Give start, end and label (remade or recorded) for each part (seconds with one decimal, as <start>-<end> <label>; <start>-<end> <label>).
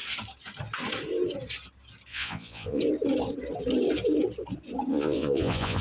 0.0-2.1 recorded; 2.1-2.8 remade; 2.8-4.9 recorded; 4.9-5.8 remade